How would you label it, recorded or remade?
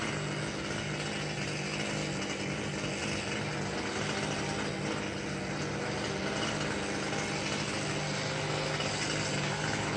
recorded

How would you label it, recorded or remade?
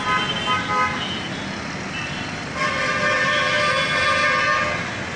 recorded